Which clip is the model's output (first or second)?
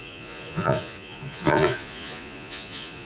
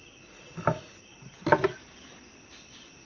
first